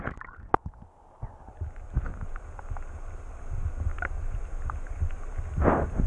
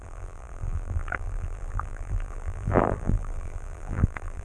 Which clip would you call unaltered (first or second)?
first